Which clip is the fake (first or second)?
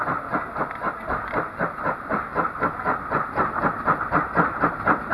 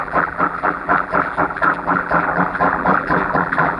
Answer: second